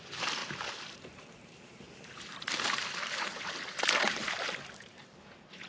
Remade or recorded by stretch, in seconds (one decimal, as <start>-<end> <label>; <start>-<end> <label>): 0.0-5.7 remade